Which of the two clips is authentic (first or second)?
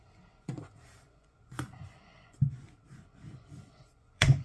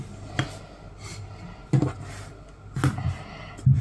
second